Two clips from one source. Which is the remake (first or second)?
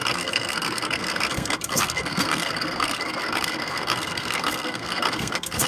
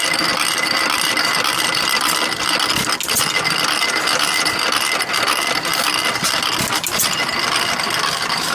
first